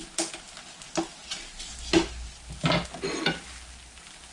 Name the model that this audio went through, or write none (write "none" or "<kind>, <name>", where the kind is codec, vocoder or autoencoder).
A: none